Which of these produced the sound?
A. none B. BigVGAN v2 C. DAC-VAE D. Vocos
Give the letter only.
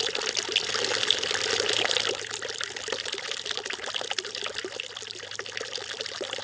B